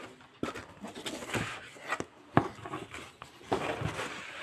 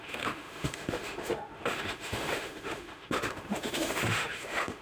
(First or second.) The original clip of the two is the first